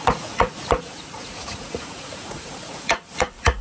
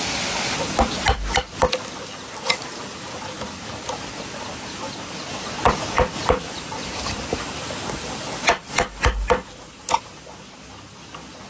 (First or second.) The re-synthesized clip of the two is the first